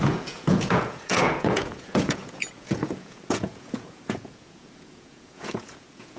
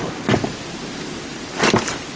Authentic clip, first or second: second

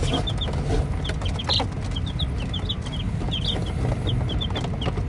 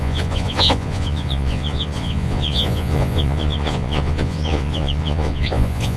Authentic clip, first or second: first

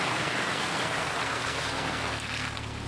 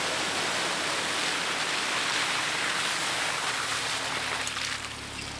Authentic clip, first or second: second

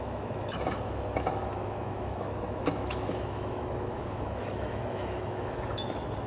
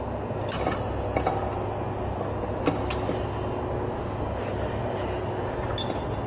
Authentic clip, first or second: second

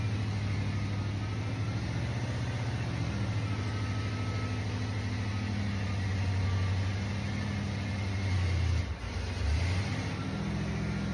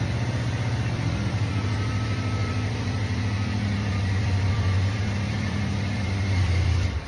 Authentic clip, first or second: first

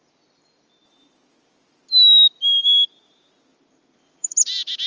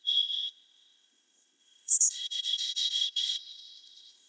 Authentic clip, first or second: first